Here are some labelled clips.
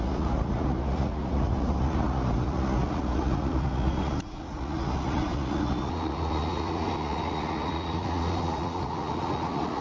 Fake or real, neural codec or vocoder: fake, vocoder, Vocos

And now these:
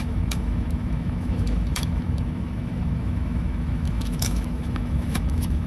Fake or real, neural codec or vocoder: fake, autoencoder, DAC-VAE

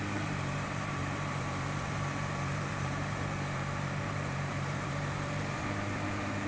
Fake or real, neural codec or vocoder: fake, vocoder, BigVGAN v2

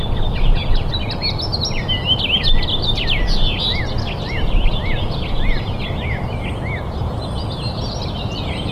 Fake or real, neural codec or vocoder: real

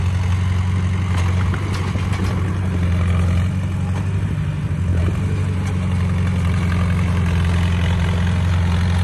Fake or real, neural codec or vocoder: real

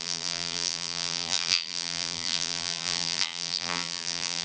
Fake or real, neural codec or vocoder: fake, vocoder, BigVGAN v2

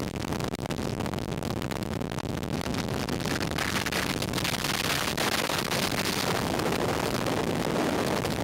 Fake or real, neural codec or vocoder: real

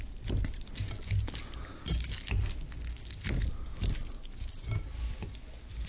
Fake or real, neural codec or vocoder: real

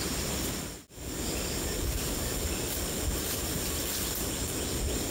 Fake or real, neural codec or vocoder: real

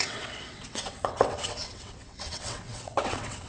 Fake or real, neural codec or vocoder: fake, vocoder, WaveNeXt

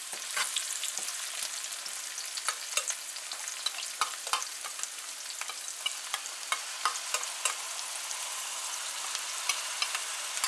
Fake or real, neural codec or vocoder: real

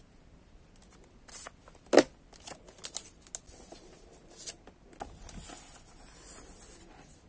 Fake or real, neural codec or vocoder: real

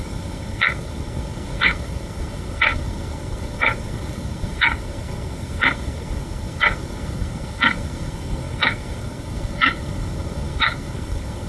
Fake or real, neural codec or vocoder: fake, codec, SNAC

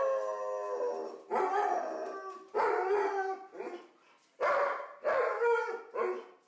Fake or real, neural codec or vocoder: real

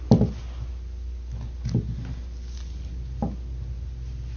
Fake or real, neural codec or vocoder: real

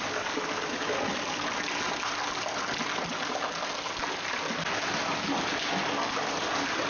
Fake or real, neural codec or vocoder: real